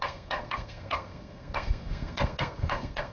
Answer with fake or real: fake